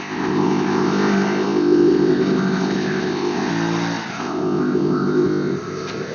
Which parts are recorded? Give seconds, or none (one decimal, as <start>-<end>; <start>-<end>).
3.5-4.1